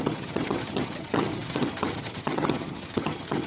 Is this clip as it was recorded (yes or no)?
no